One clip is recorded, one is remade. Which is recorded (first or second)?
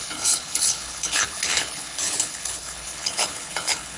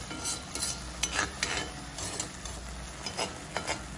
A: second